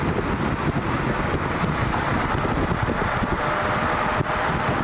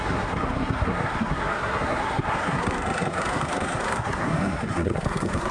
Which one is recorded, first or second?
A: first